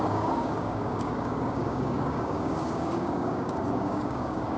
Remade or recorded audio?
remade